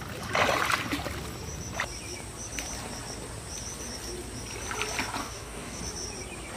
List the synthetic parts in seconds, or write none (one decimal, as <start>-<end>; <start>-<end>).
5.2-5.8